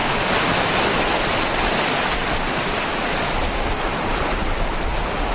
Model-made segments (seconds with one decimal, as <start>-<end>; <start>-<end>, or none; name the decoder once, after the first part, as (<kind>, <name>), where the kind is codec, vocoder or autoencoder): none